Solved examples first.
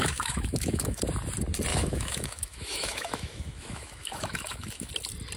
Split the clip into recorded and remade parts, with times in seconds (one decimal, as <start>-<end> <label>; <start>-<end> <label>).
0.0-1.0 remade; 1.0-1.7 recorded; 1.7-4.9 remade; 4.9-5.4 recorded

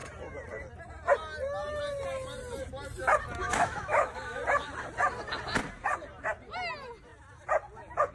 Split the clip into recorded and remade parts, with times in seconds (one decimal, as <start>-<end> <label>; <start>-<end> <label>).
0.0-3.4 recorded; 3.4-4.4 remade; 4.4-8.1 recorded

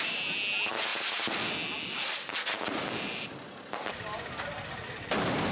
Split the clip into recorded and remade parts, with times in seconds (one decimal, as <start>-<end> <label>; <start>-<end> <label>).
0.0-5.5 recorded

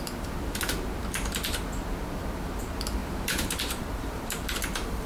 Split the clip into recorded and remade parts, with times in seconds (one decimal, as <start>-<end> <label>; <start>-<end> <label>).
0.0-3.0 recorded; 3.0-4.5 remade; 4.5-5.1 recorded

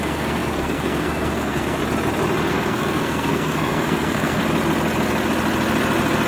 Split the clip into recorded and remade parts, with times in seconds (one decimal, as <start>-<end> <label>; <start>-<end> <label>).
0.0-1.8 remade; 1.8-2.5 recorded; 2.5-4.4 remade; 4.4-6.3 recorded

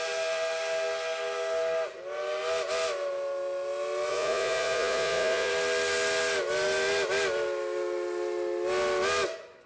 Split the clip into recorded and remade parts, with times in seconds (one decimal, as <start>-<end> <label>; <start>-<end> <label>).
0.0-4.1 recorded; 4.1-5.5 remade; 5.5-9.7 recorded